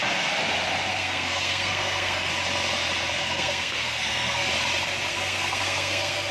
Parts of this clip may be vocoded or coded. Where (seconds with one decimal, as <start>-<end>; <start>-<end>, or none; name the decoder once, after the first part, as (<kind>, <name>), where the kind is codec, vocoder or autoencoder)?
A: 0.9-2.3 (codec, SNAC); 3.2-4.5; 5.1-6.3